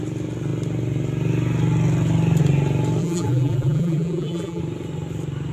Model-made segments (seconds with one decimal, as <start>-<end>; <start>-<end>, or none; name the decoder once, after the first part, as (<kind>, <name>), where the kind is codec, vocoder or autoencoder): 3.0-4.6 (vocoder, BigVGAN v2)